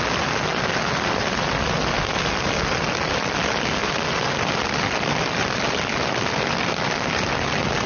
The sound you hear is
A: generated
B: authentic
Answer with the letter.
B